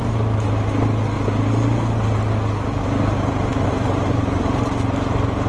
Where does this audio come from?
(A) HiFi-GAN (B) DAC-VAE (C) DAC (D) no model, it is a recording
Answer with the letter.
D